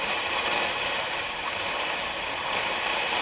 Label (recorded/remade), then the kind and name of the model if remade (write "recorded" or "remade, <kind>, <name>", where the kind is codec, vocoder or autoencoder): remade, vocoder, BigVGAN v2